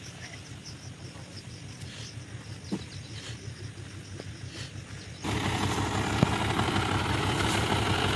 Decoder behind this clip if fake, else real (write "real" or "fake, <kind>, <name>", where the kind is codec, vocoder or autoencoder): real